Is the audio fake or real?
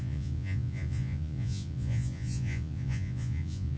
fake